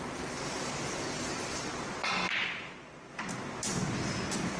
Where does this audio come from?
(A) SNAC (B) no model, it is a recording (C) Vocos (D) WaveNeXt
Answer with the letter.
B